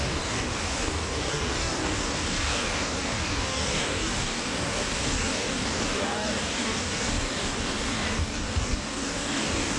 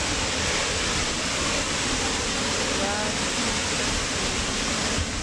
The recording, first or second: second